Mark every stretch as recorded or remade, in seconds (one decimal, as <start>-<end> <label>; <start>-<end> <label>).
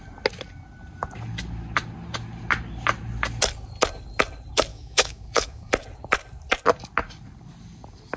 0.0-4.7 recorded; 4.7-5.7 remade; 5.7-8.2 recorded